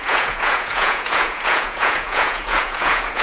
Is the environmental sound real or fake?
fake